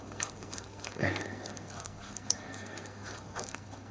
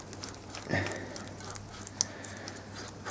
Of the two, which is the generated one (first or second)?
first